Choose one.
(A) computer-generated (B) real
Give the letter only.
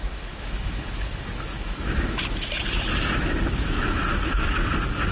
A